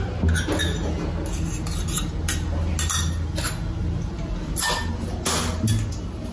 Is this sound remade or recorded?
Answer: recorded